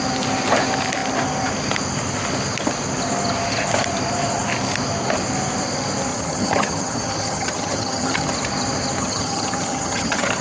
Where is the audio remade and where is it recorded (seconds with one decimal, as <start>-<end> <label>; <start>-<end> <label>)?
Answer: 0.0-6.1 recorded; 6.1-8.3 remade; 8.3-9.0 recorded; 9.0-10.4 remade